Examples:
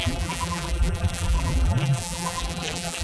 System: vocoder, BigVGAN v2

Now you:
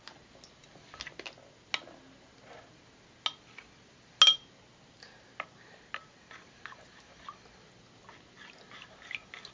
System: none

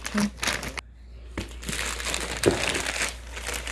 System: none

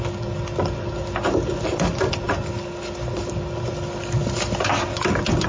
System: none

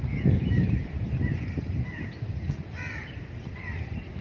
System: none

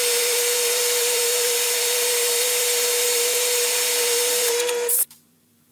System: vocoder, BigVGAN v2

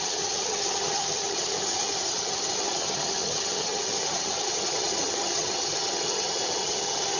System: vocoder, HiFi-GAN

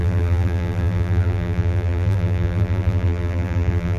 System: vocoder, BigVGAN v2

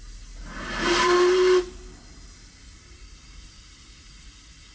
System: none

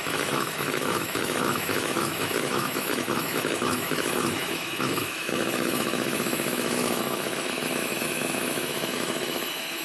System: autoencoder, DAC-VAE